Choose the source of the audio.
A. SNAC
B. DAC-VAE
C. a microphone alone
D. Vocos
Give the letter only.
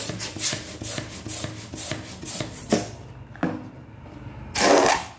C